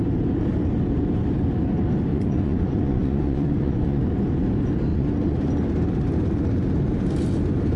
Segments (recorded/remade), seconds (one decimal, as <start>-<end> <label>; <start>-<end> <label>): 0.0-2.1 recorded; 2.1-4.0 remade; 4.0-4.9 recorded; 4.9-5.5 remade; 5.5-7.8 recorded

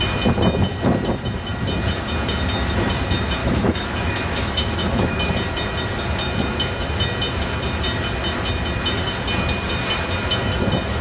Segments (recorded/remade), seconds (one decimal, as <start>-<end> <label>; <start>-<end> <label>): 0.0-3.4 recorded; 3.4-5.3 remade; 5.3-11.0 recorded

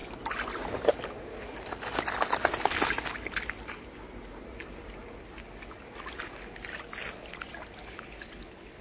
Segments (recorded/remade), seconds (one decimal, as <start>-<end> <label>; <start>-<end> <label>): 0.0-7.8 recorded; 7.8-8.8 remade

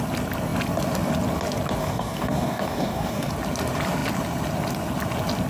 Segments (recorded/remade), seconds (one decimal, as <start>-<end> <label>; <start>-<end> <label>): 0.0-1.8 recorded; 1.8-3.3 remade; 3.3-5.5 recorded

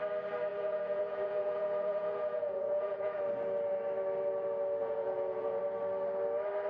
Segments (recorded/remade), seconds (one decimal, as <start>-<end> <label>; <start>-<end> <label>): 0.0-0.5 recorded; 0.5-3.2 remade; 3.2-4.8 recorded; 4.8-5.6 remade; 5.6-6.7 recorded

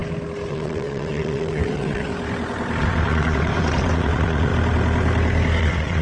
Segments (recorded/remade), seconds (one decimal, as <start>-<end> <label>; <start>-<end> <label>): 0.0-0.5 recorded; 0.5-2.1 remade; 2.1-2.8 recorded; 2.8-4.5 remade; 4.5-5.6 recorded; 5.6-6.0 remade

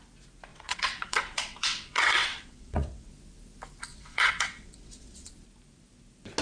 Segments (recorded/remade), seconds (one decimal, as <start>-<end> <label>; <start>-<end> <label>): 0.0-0.5 recorded; 0.5-3.1 remade; 3.1-3.9 recorded; 3.9-5.3 remade; 5.3-6.4 recorded